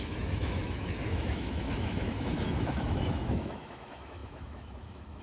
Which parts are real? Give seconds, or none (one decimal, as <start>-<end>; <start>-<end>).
none